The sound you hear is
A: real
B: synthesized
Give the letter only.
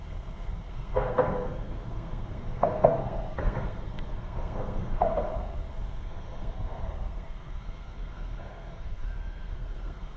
B